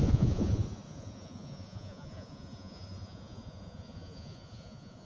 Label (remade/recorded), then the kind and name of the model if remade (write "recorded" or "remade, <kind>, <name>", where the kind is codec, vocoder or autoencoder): remade, vocoder, Vocos